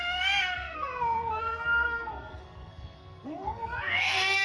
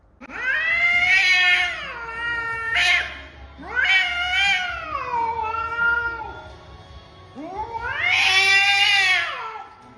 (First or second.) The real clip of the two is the second